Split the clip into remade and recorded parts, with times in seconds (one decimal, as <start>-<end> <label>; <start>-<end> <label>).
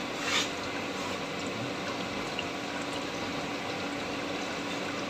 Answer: 0.0-5.1 recorded